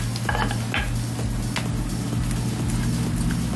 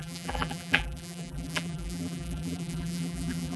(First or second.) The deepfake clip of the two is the second